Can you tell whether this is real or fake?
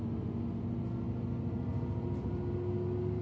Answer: real